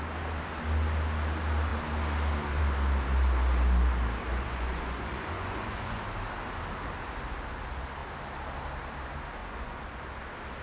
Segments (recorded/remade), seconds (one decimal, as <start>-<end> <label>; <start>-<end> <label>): 0.0-4.3 recorded; 4.3-6.0 remade; 6.0-9.4 recorded; 9.4-10.0 remade; 10.0-10.6 recorded